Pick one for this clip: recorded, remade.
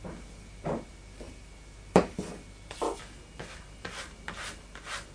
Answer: recorded